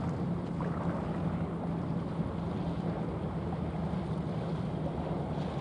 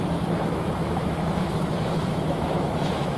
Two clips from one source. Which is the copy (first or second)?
second